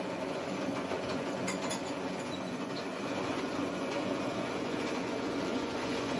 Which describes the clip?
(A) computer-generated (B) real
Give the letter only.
A